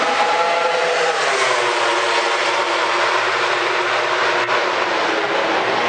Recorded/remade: recorded